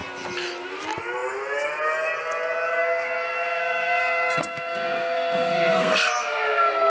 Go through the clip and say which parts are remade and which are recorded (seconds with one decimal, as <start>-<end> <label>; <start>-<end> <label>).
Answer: 0.0-2.7 recorded; 2.7-6.9 remade